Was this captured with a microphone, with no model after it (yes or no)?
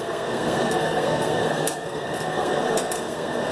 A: no